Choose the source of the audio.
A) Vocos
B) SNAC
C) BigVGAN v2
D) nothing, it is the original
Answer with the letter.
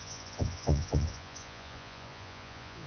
A